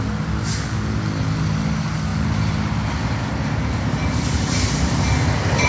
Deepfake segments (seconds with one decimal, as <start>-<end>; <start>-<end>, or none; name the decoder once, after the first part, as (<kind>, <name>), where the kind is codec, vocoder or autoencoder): none